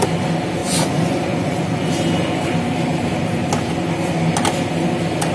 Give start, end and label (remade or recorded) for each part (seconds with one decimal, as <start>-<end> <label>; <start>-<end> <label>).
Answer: 0.0-0.6 recorded; 0.6-1.9 remade; 1.9-5.3 recorded